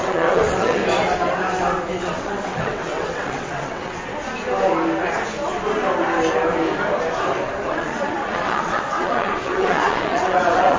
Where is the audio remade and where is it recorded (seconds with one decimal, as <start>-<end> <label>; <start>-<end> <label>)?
0.0-0.8 remade; 0.8-2.0 recorded; 2.0-4.1 remade; 4.1-7.7 recorded; 7.7-10.8 remade